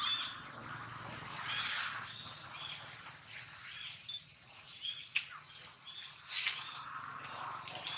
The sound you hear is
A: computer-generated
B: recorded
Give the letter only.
B